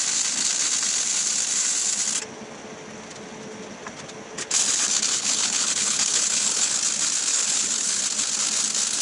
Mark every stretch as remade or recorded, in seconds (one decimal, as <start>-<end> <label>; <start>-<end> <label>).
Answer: 0.0-5.1 recorded; 5.1-6.7 remade; 6.7-7.3 recorded; 7.3-8.0 remade; 8.0-9.0 recorded